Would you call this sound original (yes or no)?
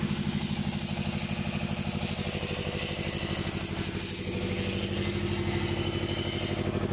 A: yes